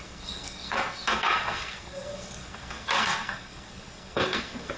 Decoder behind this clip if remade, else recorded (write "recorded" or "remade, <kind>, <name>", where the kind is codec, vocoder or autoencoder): remade, codec, SNAC